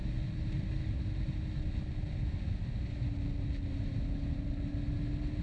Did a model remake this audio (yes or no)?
no